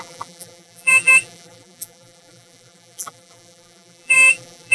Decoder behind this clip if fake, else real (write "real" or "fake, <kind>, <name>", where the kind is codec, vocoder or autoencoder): fake, vocoder, BigVGAN v2